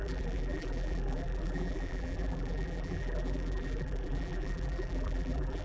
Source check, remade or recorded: remade